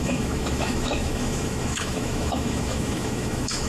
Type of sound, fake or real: fake